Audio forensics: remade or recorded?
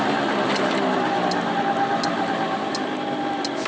recorded